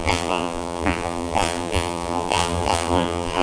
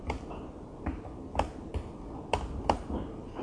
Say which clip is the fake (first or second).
first